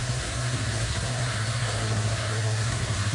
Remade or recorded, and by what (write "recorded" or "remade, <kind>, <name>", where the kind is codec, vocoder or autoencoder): remade, codec, SNAC